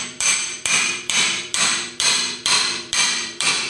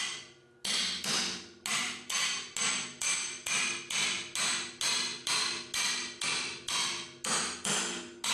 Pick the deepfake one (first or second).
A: first